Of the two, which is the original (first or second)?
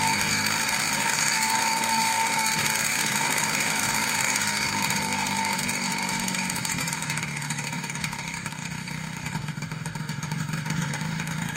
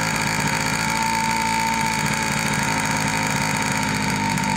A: second